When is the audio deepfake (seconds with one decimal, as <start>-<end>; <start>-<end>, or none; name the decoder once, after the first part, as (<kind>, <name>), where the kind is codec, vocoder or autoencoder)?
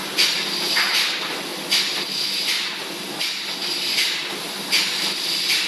none